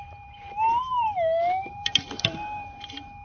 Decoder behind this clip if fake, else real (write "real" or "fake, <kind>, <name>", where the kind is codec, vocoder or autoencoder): fake, vocoder, BigVGAN v2